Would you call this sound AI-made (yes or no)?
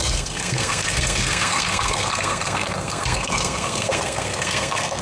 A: yes